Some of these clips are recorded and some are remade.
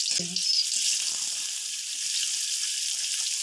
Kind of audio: recorded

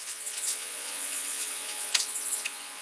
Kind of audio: remade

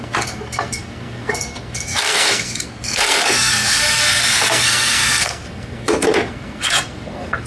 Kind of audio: remade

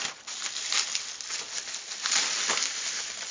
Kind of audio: recorded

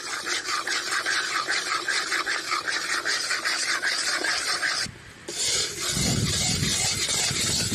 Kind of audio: recorded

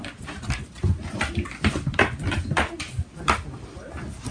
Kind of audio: recorded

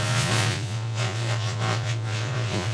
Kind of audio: remade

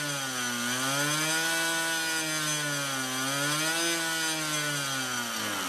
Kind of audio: recorded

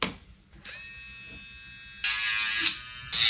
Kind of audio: recorded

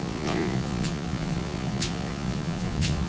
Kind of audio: remade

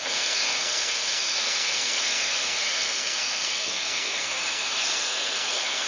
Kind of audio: remade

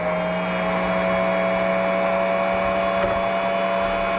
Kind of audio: recorded